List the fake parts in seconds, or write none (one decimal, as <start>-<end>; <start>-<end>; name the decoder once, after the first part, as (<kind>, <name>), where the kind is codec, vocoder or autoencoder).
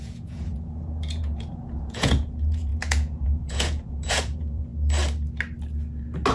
0.0-4.7 (vocoder, Vocos)